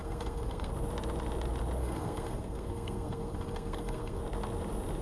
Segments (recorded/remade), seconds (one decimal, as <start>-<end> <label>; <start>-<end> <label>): 0.0-0.7 remade; 0.7-1.8 recorded; 1.8-4.2 remade; 4.2-5.0 recorded